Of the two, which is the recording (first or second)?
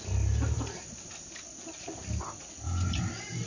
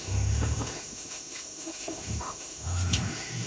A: first